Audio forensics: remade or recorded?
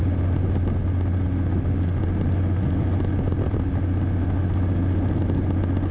recorded